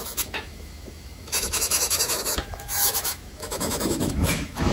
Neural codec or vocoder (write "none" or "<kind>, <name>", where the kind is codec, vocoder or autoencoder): autoencoder, DAC-VAE